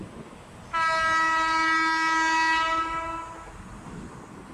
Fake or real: real